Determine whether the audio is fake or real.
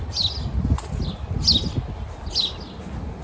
real